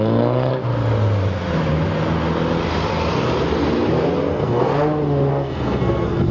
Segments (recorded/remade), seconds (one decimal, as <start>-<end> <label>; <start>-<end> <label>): 0.0-0.5 remade; 0.5-4.3 recorded; 4.3-4.7 remade; 4.7-5.3 recorded; 5.3-6.3 remade